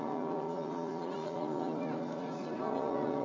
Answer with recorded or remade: remade